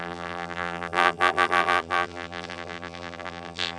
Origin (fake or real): fake